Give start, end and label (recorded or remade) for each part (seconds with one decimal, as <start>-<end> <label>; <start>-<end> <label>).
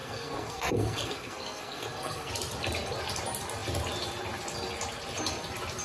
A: 0.0-2.3 remade; 2.3-5.8 recorded